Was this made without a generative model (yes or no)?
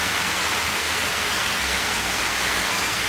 no